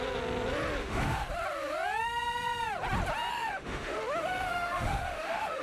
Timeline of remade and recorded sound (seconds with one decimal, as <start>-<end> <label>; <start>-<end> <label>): 0.0-0.8 recorded; 0.8-1.3 remade; 1.3-3.3 recorded; 3.3-5.6 remade